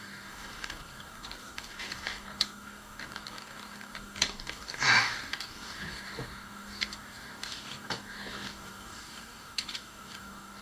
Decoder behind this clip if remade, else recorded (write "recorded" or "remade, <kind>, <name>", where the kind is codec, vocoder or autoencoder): remade, codec, DAC